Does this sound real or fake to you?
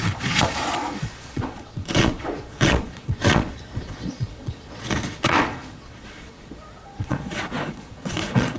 fake